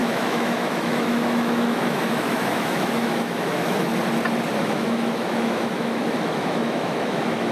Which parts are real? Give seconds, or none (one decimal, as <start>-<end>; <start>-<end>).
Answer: 3.9-4.6